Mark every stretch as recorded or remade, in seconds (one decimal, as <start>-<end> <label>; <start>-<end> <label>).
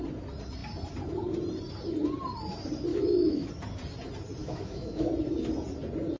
0.0-2.9 recorded; 2.9-3.5 remade; 3.5-4.4 recorded; 4.4-5.1 remade; 5.1-6.2 recorded